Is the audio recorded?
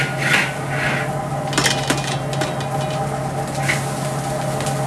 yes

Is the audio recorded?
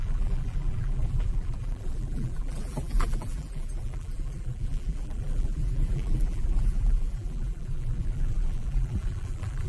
no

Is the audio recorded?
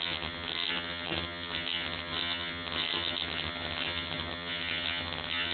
no